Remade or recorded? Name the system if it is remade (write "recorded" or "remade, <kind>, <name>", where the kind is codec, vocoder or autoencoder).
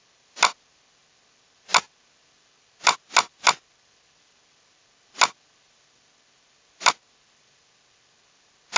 recorded